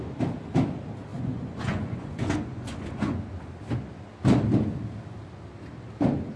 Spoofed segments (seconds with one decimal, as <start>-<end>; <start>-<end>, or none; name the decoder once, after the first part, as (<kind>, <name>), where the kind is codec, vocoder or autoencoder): 1.1-3.2 (vocoder, Vocos)